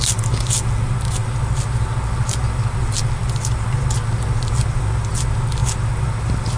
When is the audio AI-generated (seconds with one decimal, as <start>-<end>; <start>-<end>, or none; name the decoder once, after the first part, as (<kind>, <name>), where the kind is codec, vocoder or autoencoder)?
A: none